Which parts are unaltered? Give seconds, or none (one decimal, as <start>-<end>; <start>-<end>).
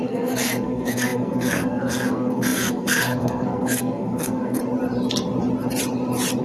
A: 4.6-6.4